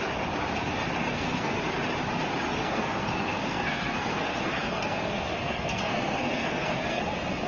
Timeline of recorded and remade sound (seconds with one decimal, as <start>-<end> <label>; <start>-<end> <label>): 0.0-1.0 recorded; 1.0-1.6 remade; 1.6-2.6 recorded; 2.6-7.1 remade; 7.1-7.5 recorded